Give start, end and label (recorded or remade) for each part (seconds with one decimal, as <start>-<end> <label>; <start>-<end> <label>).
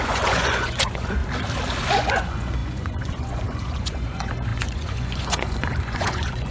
0.0-1.2 remade; 1.2-1.9 recorded; 1.9-6.5 remade